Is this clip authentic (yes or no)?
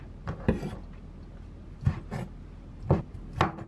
yes